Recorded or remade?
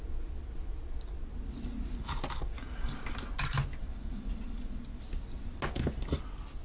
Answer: recorded